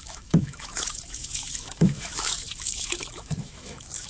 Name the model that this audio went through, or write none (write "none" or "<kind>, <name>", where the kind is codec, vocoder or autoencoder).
autoencoder, DAC-VAE